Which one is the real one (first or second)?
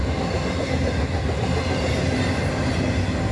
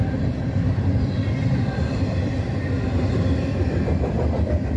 first